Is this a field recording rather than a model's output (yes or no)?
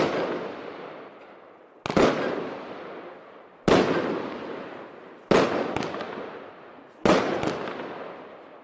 yes